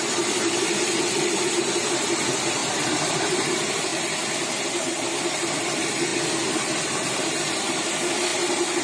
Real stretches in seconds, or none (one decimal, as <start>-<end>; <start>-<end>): 2.6-3.2; 3.9-4.8; 6.1-7.2